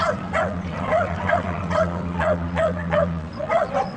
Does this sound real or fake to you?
fake